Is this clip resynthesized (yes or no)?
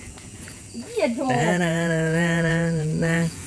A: yes